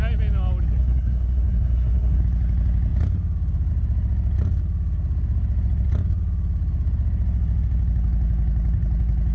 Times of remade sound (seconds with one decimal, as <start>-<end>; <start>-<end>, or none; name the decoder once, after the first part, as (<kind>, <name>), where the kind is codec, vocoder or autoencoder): 0.8-2.2 (codec, SNAC)